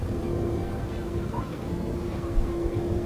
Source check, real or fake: fake